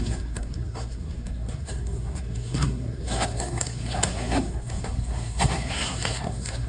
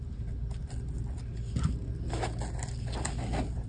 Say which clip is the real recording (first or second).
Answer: second